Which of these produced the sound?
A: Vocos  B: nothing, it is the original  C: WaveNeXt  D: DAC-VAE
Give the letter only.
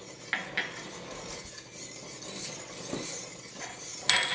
B